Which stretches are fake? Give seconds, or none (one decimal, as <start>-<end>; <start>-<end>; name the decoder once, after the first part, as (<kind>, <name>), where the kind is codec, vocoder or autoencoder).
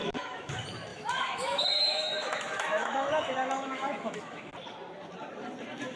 0.0-0.5 (autoencoder, DAC-VAE); 0.9-4.5